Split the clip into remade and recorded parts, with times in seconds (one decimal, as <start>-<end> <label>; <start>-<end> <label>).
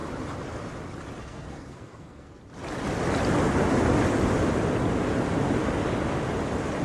0.0-1.2 recorded; 1.2-2.4 remade; 2.4-6.8 recorded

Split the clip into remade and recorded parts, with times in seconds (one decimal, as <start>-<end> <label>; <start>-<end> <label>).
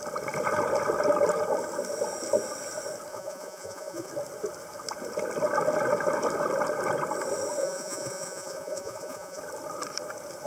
0.0-3.1 recorded; 3.1-4.1 remade; 4.1-7.6 recorded; 7.6-9.4 remade; 9.4-10.5 recorded